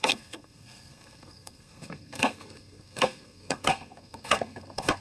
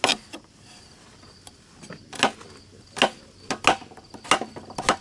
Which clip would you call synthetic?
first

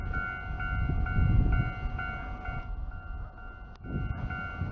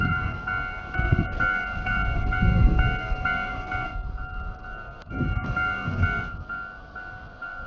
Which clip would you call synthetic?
second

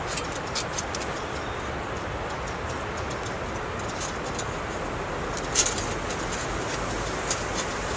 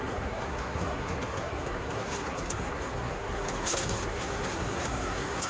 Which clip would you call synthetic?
second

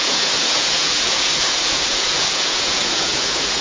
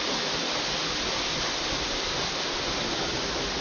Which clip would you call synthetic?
first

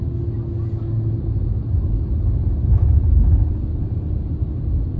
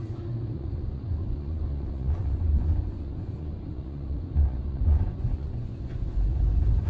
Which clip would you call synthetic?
second